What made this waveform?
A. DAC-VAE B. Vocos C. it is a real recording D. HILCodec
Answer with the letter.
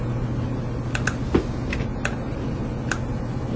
C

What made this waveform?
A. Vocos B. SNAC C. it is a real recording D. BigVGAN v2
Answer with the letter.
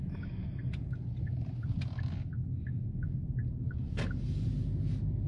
C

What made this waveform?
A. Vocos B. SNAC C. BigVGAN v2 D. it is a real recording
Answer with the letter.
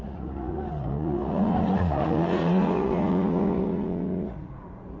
A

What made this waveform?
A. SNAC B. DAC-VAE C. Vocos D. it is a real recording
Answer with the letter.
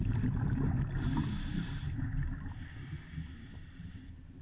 D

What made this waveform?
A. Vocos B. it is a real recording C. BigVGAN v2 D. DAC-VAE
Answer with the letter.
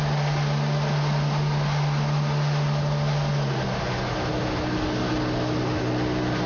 B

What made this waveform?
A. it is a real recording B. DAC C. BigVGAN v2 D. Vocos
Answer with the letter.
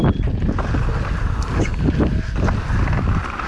A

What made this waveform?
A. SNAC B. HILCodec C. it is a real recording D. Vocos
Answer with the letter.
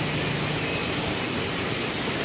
C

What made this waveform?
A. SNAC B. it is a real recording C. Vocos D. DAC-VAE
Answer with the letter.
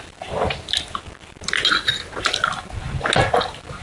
B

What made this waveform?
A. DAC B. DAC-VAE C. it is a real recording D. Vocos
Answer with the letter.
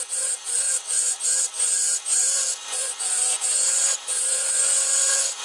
D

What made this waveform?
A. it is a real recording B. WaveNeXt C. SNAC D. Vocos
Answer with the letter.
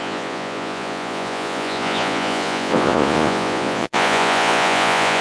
D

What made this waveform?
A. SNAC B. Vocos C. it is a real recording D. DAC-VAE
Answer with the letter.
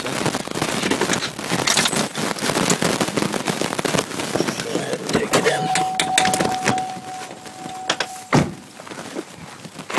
C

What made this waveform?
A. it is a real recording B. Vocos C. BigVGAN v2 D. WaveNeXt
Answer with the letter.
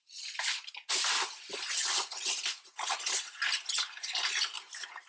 A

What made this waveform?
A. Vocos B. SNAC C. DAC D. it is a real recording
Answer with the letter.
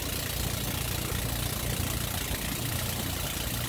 D